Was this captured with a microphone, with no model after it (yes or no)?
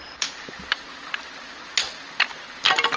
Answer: yes